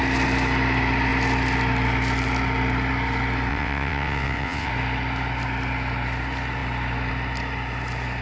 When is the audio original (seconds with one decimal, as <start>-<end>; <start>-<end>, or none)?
0.0-3.5; 4.7-8.2